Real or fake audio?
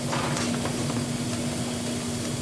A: real